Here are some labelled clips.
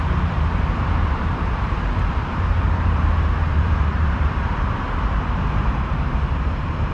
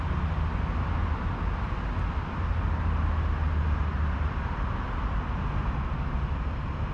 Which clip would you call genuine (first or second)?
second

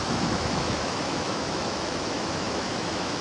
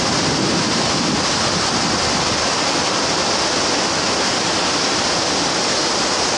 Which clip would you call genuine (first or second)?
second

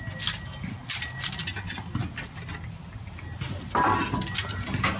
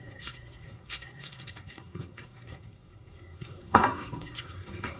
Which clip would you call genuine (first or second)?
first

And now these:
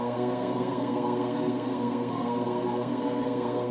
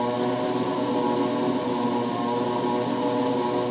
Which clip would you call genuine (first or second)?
second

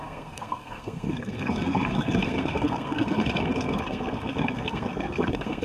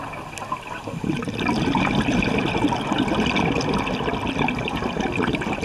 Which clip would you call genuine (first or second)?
second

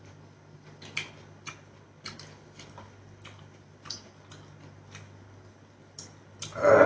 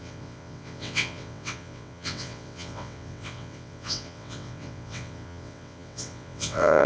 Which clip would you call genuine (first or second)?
first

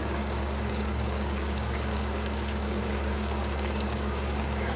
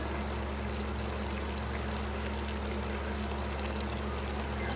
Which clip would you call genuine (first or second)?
second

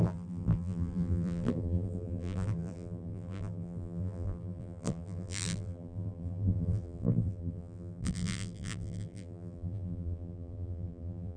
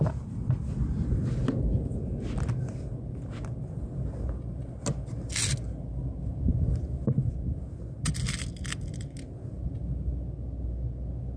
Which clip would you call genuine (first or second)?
second